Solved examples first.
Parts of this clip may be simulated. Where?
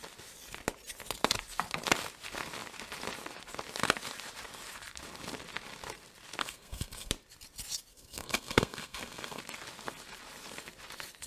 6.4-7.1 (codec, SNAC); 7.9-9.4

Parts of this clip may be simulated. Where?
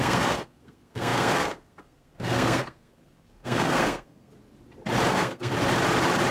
0.0-4.3 (codec, SNAC); 5.1-5.5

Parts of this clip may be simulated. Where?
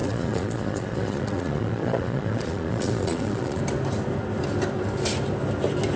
0.0-3.6 (vocoder, Vocos)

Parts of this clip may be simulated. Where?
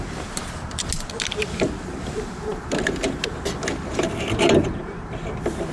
2.5-3.0 (vocoder, BigVGAN v2)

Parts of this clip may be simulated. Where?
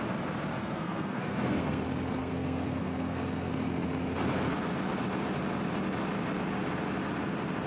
0.6-1.8 (codec, SNAC); 2.2-3.5